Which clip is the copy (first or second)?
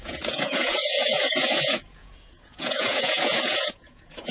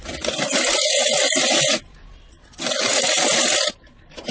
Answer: first